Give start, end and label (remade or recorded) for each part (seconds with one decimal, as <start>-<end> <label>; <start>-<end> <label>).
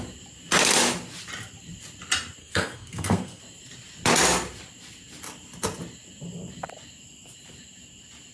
0.0-2.4 recorded; 2.4-3.4 remade; 3.4-8.3 recorded